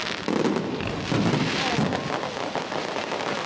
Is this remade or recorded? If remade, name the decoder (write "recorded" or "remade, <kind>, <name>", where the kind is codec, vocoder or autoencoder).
recorded